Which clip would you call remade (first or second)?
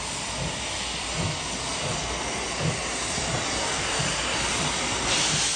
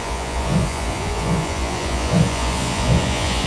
second